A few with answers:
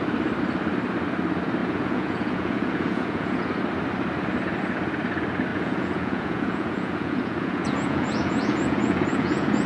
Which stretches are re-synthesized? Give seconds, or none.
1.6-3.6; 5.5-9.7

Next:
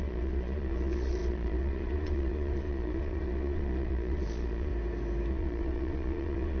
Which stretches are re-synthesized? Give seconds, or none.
0.0-4.7; 5.3-6.6

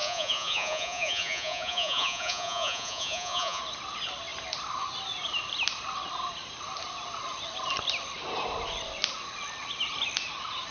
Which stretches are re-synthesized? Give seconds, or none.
0.0-3.6